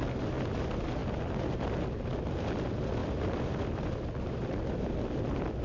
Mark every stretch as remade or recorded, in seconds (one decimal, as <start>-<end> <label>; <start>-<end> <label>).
0.0-3.0 recorded; 3.0-5.6 remade